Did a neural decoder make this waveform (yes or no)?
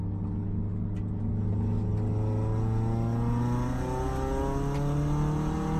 no